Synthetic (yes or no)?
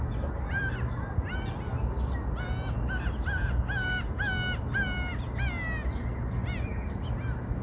no